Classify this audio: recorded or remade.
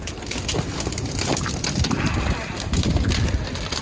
recorded